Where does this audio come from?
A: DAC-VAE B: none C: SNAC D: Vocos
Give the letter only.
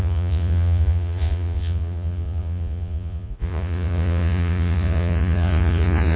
D